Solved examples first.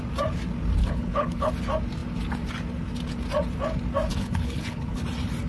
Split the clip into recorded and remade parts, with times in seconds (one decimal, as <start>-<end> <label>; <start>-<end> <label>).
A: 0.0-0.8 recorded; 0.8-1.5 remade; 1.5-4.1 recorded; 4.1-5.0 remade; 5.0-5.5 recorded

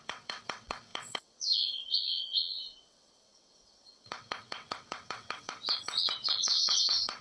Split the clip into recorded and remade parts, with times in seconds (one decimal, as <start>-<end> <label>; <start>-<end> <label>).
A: 0.0-7.2 remade

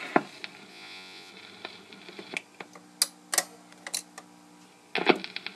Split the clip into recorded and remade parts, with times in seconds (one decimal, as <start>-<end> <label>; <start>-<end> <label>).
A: 0.0-0.7 recorded; 0.7-1.3 remade; 1.3-5.6 recorded

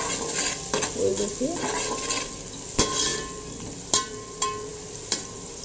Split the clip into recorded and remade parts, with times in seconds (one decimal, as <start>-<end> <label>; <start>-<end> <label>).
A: 0.0-5.6 recorded

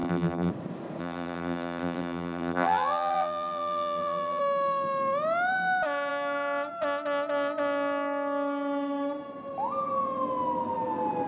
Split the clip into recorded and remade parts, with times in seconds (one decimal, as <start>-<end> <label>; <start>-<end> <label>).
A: 0.0-0.5 remade; 0.5-1.0 recorded; 1.0-4.4 remade; 4.4-11.3 recorded

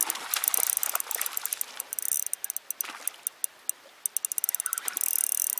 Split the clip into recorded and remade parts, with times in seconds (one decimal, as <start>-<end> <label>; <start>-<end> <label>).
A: 0.0-5.6 recorded